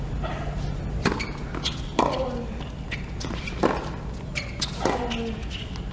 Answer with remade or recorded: recorded